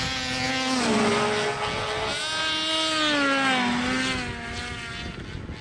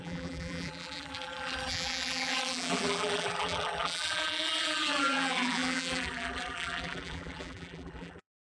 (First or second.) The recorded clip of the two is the first